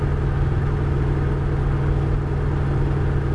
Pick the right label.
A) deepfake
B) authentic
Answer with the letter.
B